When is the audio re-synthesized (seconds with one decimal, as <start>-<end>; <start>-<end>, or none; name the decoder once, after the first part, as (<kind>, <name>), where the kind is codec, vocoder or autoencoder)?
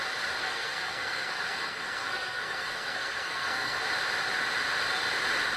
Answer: 0.4-3.8 (codec, SNAC)